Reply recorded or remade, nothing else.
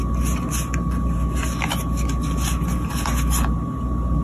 recorded